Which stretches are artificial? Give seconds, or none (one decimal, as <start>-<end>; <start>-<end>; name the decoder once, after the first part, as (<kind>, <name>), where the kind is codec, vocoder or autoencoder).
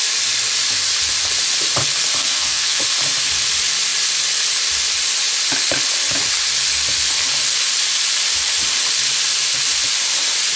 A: 2.2-2.8 (codec, SNAC)